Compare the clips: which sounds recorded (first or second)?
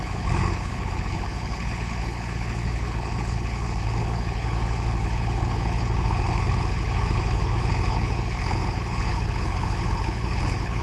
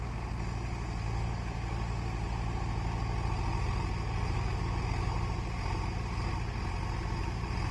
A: second